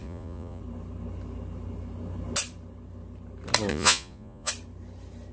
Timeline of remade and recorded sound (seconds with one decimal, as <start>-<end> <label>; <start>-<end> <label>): 0.0-0.6 remade; 0.6-3.7 recorded; 3.7-4.5 remade; 4.5-5.3 recorded